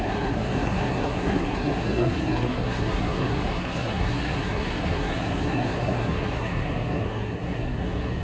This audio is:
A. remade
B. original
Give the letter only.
A